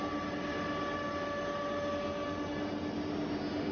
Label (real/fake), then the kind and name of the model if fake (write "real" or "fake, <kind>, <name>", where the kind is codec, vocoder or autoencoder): real